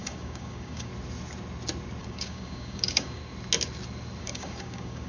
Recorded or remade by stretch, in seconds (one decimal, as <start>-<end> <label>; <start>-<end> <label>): 0.0-0.9 remade; 0.9-2.0 recorded; 2.0-3.2 remade; 3.2-4.2 recorded; 4.2-5.1 remade